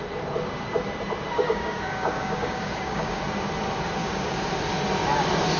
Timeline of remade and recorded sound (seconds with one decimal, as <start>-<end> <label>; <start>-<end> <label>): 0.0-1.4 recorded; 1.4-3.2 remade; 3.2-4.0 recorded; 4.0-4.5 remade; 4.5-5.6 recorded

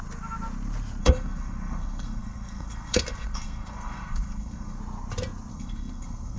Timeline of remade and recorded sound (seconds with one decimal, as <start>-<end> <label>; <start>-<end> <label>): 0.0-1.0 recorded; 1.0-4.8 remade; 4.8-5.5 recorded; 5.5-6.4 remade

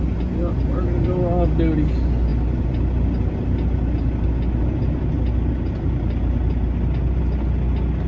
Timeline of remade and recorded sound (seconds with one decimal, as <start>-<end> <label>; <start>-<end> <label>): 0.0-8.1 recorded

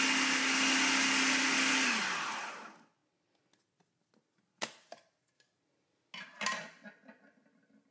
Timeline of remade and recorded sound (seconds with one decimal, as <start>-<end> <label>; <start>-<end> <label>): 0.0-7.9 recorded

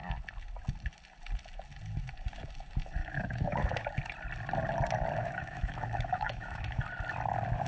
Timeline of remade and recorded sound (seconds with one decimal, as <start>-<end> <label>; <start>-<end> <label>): 0.0-3.0 recorded; 3.0-3.8 remade; 3.8-5.2 recorded; 5.2-6.8 remade; 6.8-7.7 recorded

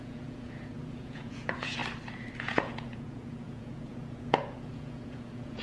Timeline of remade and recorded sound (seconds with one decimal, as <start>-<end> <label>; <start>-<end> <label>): 0.0-1.8 remade; 1.8-2.4 recorded; 2.4-5.6 remade

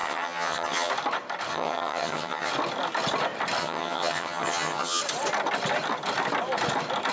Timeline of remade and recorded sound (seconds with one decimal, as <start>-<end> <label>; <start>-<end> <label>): 0.0-0.9 remade; 0.9-1.5 recorded; 1.5-2.5 remade; 2.5-3.6 recorded; 3.6-5.0 remade; 5.0-7.1 recorded